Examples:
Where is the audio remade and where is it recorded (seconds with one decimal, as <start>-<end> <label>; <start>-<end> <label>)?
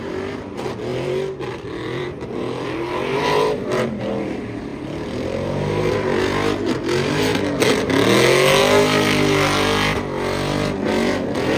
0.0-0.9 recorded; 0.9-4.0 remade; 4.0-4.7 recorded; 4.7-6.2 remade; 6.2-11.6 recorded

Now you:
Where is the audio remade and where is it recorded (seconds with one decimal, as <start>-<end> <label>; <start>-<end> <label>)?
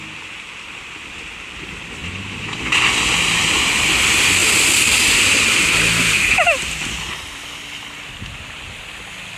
0.0-2.0 recorded; 2.0-3.7 remade; 3.7-4.4 recorded; 4.4-8.8 remade; 8.8-9.4 recorded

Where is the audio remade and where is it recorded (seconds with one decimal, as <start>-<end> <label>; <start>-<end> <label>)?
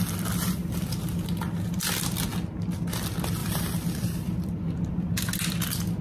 0.0-3.4 recorded; 3.4-5.1 remade; 5.1-6.0 recorded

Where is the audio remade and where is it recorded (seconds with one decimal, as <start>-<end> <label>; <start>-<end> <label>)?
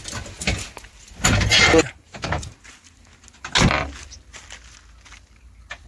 0.0-1.5 recorded; 1.5-2.5 remade; 2.5-5.9 recorded